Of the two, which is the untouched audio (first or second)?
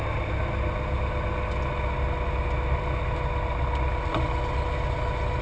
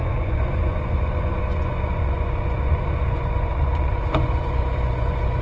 first